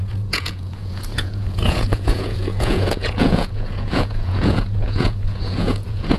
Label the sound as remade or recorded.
remade